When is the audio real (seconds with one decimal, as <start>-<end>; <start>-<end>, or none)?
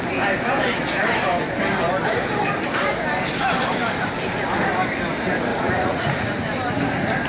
0.0-5.5; 6.4-7.3